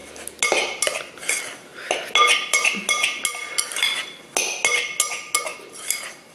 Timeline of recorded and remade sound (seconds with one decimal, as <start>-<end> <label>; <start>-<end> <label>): 0.0-6.3 recorded